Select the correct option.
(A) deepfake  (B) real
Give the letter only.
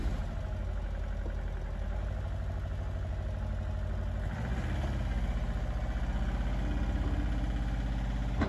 B